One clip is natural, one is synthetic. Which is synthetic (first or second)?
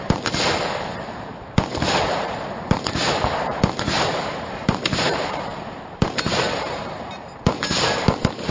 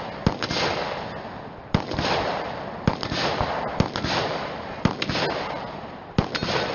first